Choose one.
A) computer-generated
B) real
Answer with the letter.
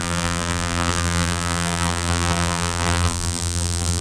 A